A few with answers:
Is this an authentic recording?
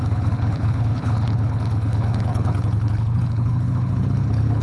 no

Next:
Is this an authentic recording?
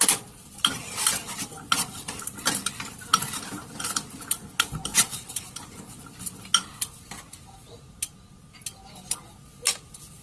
yes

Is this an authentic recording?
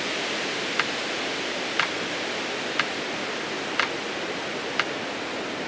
yes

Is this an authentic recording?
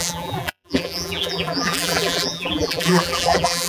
no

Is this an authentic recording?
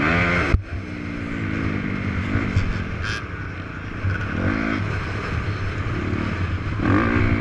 yes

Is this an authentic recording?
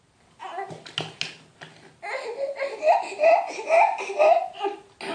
yes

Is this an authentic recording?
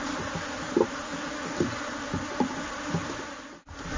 yes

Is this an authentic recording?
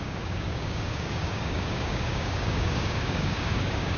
no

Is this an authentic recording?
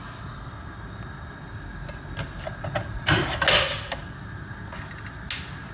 yes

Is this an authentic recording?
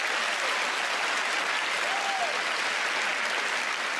yes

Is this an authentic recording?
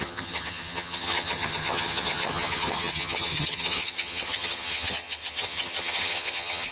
no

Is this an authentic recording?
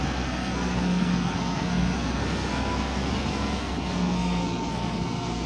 no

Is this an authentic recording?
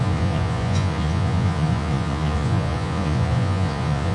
no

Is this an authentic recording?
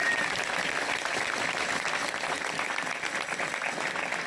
yes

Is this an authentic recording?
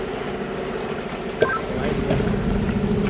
yes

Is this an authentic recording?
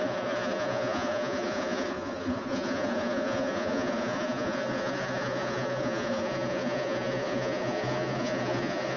no